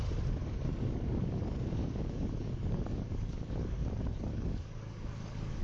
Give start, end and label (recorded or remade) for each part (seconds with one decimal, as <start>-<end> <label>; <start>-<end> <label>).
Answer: 0.0-0.4 recorded; 0.4-3.8 remade; 3.8-4.3 recorded; 4.3-5.6 remade